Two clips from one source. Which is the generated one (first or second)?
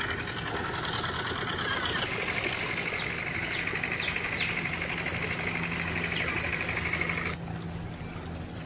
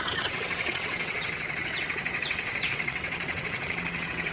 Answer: second